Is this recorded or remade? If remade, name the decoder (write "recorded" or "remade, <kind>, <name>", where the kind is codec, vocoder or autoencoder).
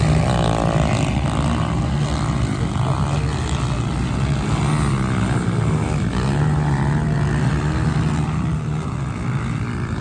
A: recorded